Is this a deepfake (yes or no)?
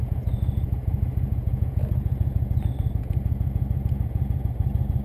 yes